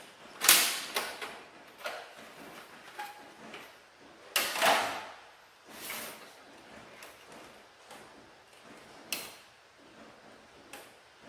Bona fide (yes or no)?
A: yes